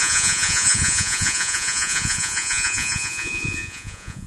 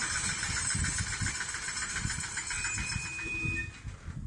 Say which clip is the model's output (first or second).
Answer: first